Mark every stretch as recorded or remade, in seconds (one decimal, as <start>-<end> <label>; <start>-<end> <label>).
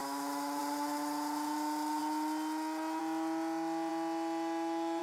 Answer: 0.0-0.6 remade; 0.6-5.0 recorded